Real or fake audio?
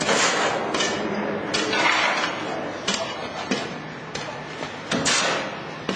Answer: real